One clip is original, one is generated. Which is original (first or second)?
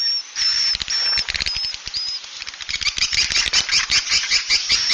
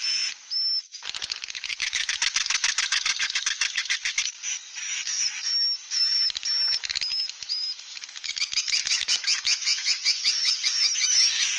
first